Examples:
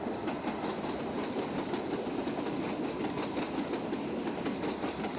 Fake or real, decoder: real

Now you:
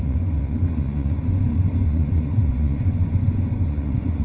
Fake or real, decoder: fake, vocoder, Vocos